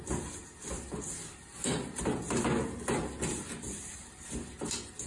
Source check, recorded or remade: recorded